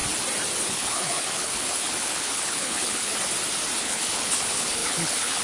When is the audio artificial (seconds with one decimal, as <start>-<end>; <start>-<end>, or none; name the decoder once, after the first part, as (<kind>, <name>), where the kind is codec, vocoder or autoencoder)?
0.6-3.1 (codec, HILCodec); 3.8-5.4